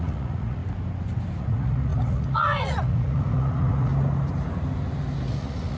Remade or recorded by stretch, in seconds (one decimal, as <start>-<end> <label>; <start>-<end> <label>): 0.0-0.6 remade; 0.6-1.4 recorded; 1.4-3.9 remade; 3.9-5.3 recorded; 5.3-5.8 remade